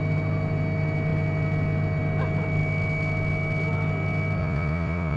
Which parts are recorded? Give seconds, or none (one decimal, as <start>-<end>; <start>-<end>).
0.0-4.4